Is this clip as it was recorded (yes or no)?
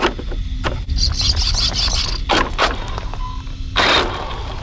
yes